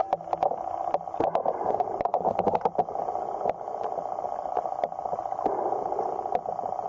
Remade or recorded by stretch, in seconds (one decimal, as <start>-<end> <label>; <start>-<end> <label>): 0.0-6.9 recorded